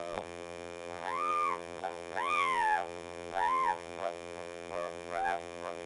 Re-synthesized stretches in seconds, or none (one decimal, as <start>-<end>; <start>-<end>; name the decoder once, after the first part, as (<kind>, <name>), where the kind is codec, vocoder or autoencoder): 0.0-5.9 (vocoder, BigVGAN v2)